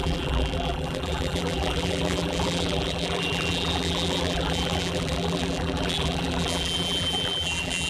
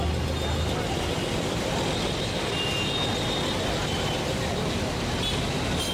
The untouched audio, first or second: second